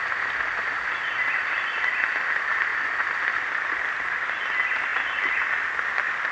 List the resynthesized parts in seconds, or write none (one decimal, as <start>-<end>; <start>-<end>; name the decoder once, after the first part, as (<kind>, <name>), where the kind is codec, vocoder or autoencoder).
2.7-4.4 (vocoder, BigVGAN v2)